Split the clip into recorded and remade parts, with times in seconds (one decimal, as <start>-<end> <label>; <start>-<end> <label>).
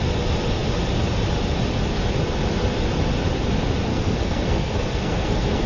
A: 0.0-3.9 recorded; 3.9-5.7 remade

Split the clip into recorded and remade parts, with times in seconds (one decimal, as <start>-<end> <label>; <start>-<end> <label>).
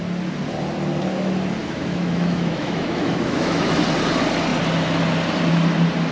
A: 0.0-1.6 recorded; 1.6-3.8 remade; 3.8-6.1 recorded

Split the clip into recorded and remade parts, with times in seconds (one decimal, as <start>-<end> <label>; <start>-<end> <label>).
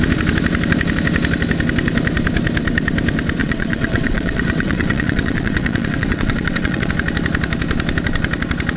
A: 0.0-3.4 recorded; 3.4-6.9 remade; 6.9-8.8 recorded